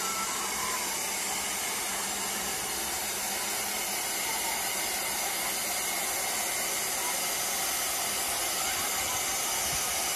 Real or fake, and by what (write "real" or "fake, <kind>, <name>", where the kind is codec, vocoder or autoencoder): real